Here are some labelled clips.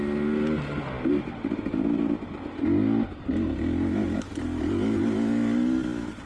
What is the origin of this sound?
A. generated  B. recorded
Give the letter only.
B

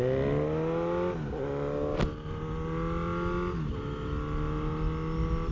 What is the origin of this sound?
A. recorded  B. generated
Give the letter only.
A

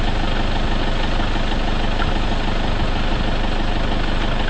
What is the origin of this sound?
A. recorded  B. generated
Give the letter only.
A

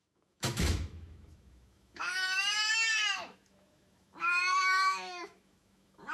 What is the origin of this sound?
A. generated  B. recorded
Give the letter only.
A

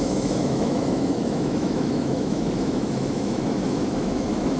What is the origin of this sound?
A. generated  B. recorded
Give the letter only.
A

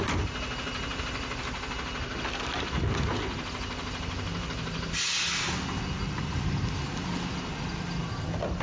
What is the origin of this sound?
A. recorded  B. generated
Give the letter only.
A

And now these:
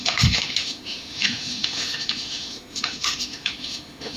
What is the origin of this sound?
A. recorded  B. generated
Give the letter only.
B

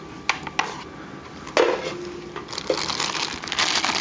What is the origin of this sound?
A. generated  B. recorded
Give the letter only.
B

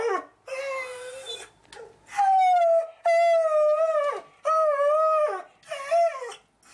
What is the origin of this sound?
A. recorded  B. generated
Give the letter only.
A